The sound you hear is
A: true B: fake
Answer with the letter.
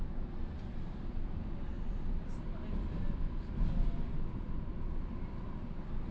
A